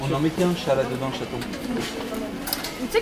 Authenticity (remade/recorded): recorded